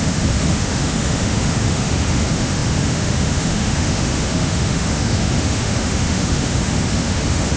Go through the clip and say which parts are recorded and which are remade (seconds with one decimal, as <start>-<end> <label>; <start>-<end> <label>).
0.0-7.6 remade